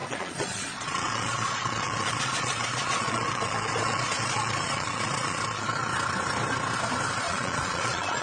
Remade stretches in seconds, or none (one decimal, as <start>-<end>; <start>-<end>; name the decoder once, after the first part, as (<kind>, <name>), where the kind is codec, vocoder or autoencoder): 0.0-5.9 (vocoder, Vocos); 7.2-8.2